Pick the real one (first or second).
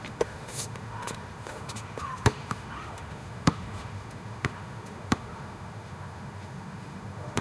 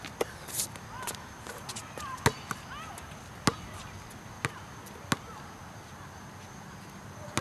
second